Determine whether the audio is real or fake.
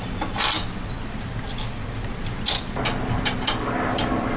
real